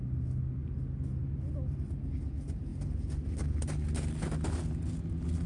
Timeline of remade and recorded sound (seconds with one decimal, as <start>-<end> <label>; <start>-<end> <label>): 0.0-5.5 recorded